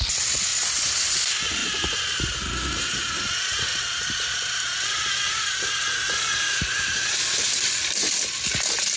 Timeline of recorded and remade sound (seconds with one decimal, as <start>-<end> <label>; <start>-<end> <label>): 0.0-9.0 recorded